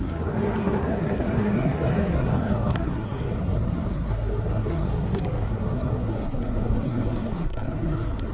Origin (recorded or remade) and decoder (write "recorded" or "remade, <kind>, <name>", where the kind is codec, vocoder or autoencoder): remade, codec, SNAC